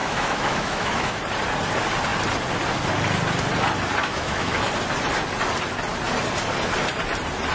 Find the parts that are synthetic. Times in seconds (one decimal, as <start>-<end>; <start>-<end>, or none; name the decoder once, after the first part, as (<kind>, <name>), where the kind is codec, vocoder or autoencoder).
0.0-1.2 (autoencoder, DAC-VAE); 4.0-4.6